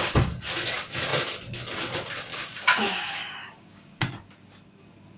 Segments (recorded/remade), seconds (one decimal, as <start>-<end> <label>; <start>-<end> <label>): 0.0-2.3 recorded; 2.3-4.1 remade; 4.1-5.2 recorded